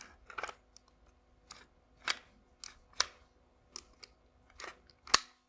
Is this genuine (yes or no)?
yes